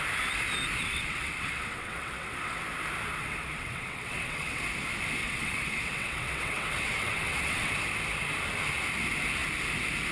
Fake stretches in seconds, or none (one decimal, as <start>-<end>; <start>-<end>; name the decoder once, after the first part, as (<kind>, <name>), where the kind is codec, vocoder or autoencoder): 0.9-2.6 (vocoder, WaveNeXt); 3.2-4.6; 5.2-7.7